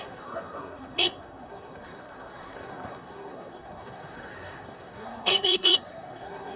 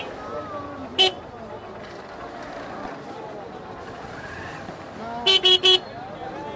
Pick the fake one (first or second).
first